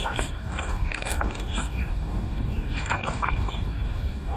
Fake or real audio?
fake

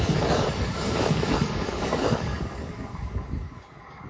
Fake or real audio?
fake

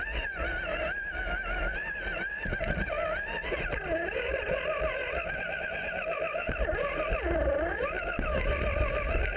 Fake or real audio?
real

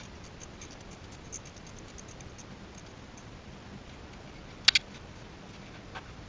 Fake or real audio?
real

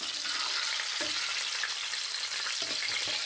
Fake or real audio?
real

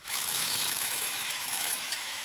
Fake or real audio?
fake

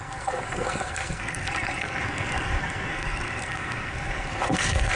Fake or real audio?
fake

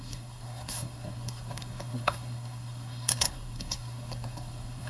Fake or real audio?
fake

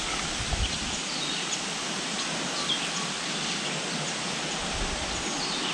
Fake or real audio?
real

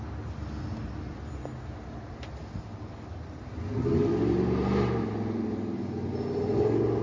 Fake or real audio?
real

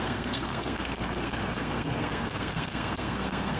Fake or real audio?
fake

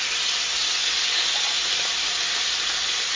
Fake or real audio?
real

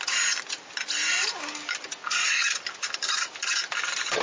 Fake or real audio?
real